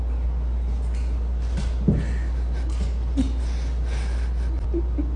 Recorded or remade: recorded